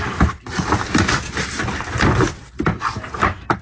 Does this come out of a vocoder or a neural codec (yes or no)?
no